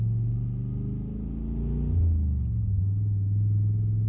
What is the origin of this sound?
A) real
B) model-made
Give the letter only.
A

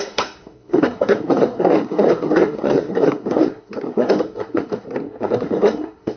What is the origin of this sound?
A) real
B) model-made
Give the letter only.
B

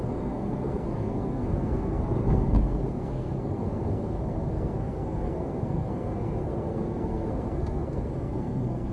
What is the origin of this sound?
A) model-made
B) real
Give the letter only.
A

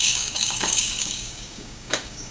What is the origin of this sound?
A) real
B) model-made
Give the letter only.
B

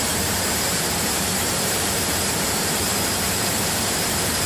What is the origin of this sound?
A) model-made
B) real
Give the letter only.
A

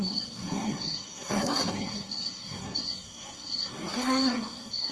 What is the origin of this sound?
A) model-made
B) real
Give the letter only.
A